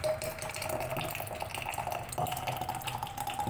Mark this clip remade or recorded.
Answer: recorded